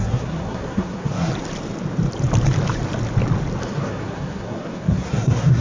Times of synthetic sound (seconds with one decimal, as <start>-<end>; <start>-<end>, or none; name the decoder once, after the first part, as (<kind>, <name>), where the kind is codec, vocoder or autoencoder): 0.0-1.3 (codec, SNAC); 3.6-5.6